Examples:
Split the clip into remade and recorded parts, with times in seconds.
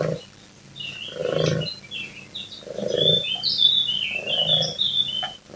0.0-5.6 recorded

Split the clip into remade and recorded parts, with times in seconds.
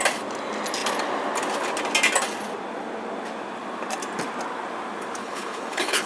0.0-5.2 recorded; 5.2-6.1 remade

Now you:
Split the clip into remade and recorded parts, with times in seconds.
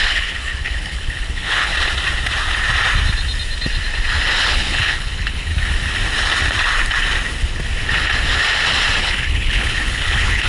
0.0-1.7 remade; 1.7-4.4 recorded; 4.4-5.5 remade; 5.5-9.0 recorded; 9.0-10.5 remade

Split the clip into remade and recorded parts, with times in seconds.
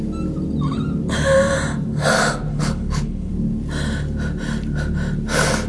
0.0-2.5 recorded; 2.5-3.3 remade; 3.3-5.7 recorded